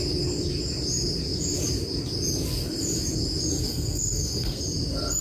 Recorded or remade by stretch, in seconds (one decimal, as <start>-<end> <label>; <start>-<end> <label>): 0.0-3.7 recorded; 3.7-4.6 remade; 4.6-5.2 recorded